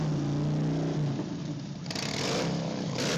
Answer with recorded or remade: recorded